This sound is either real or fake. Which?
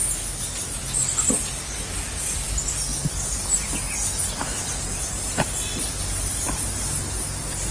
real